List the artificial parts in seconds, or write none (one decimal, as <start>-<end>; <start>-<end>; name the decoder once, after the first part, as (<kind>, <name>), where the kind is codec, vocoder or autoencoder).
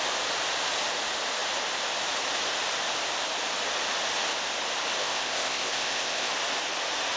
5.0-6.3 (codec, ZipCodec)